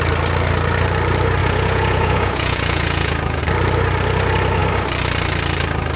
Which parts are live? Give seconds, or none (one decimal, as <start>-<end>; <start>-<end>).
0.0-1.4; 3.4-6.0